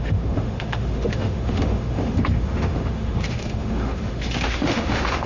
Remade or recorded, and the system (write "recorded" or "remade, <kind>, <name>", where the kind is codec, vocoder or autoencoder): remade, autoencoder, DAC-VAE